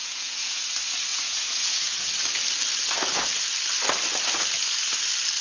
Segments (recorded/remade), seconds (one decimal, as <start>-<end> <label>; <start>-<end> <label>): 0.0-0.6 remade; 0.6-1.1 recorded; 1.1-2.1 remade; 2.1-5.4 recorded